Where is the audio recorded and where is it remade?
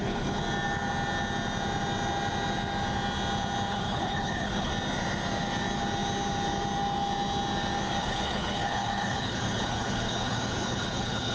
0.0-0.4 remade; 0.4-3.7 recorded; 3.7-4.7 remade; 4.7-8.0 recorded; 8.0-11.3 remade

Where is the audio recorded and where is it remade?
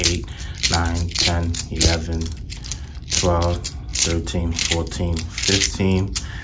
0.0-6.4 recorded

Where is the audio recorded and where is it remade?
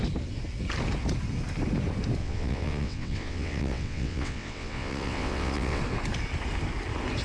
0.0-2.2 recorded; 2.2-5.8 remade; 5.8-7.2 recorded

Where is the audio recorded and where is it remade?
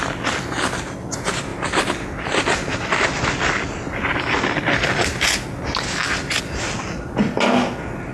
0.0-8.1 recorded